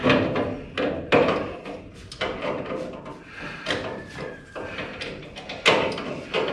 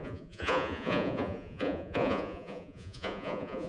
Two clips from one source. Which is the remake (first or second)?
second